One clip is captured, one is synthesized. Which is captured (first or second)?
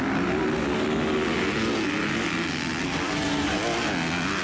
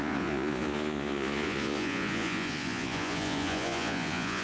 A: first